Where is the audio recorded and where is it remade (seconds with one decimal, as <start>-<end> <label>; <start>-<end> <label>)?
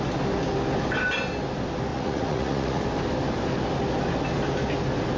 0.0-1.9 recorded; 1.9-2.8 remade; 2.8-5.2 recorded